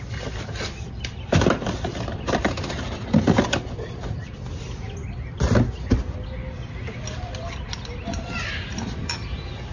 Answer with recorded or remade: recorded